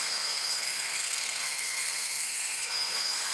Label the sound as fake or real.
fake